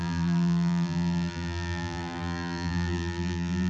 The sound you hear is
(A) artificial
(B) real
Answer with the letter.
A